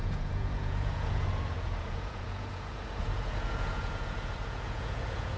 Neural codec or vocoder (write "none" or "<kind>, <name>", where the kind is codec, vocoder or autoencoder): vocoder, Vocos